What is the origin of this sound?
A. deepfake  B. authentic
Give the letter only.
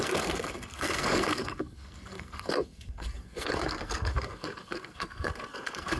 A